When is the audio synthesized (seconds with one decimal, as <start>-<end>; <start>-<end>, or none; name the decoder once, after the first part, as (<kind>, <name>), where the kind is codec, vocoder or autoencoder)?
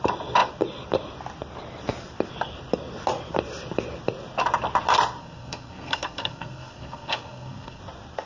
5.2-7.8 (codec, SNAC)